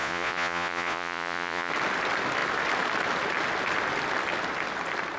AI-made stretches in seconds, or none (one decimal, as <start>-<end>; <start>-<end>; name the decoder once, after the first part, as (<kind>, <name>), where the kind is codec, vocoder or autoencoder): 0.0-1.7 (vocoder, Vocos)